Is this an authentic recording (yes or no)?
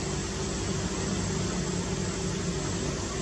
yes